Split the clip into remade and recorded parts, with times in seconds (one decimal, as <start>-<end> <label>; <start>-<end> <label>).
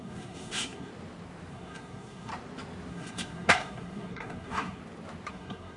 0.0-0.9 remade; 0.9-1.5 recorded; 1.5-2.3 remade; 2.3-2.9 recorded; 2.9-4.8 remade; 4.8-5.3 recorded; 5.3-5.8 remade